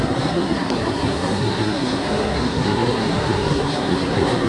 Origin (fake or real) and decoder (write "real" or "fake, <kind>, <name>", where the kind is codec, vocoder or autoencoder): fake, codec, SNAC